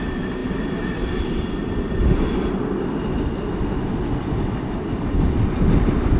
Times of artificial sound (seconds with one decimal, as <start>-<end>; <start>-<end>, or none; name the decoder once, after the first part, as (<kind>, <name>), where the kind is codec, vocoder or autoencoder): none